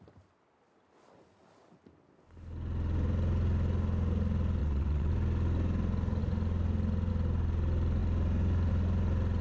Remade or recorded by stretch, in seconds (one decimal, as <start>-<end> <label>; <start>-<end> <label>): 0.0-4.6 recorded; 4.6-5.1 remade; 5.1-9.4 recorded

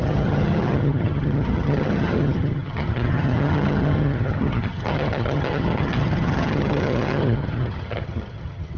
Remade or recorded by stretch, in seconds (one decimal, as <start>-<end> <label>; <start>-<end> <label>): 0.0-8.8 remade

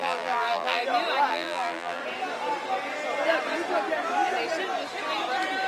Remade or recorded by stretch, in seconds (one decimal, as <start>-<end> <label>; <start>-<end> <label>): 0.0-0.8 remade; 0.8-1.3 recorded; 1.3-2.0 remade; 2.0-5.7 recorded

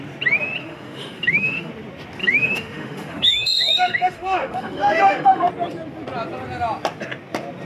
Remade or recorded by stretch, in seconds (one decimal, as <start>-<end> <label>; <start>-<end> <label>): 0.0-0.6 recorded; 0.6-1.7 remade; 1.7-2.2 recorded; 2.2-5.5 remade; 5.5-7.6 recorded

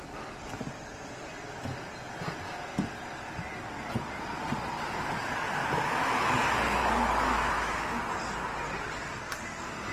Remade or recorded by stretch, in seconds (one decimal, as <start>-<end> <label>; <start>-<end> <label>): 0.0-5.6 recorded; 5.6-8.0 remade; 8.0-9.9 recorded

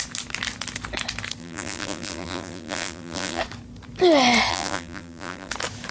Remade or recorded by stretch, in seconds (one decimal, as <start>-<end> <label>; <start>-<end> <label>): 0.0-1.4 recorded; 1.4-3.4 remade; 3.4-4.5 recorded; 4.5-5.5 remade; 5.5-5.9 recorded

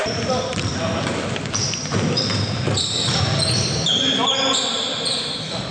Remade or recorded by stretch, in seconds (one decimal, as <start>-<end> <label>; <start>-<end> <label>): 0.0-3.0 remade; 3.0-5.7 recorded